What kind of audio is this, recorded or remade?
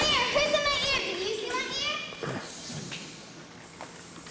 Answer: recorded